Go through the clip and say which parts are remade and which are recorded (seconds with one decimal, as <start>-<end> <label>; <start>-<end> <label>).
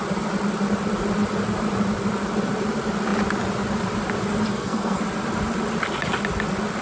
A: 0.0-4.5 recorded; 4.5-5.0 remade; 5.0-6.8 recorded